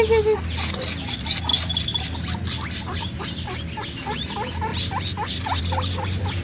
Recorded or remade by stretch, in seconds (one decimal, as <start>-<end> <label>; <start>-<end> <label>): 0.0-6.4 recorded